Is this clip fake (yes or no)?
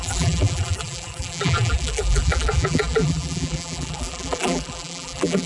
yes